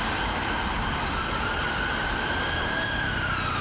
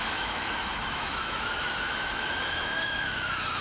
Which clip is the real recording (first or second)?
first